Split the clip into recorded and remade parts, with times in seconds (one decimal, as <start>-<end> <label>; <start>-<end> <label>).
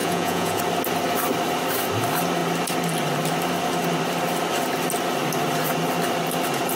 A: 0.0-0.6 remade; 0.6-6.8 recorded